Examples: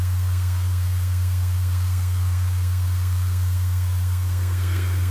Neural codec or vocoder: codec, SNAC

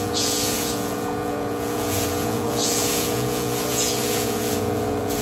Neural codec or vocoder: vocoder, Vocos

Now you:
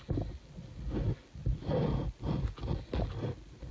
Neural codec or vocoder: none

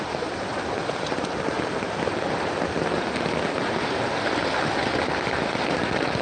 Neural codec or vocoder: none